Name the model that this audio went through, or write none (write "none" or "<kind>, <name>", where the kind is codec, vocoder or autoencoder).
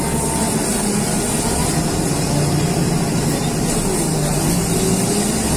none